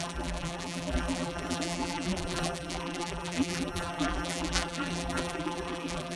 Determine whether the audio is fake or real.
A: fake